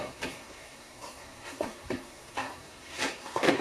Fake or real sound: fake